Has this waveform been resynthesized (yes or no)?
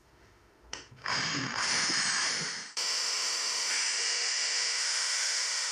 yes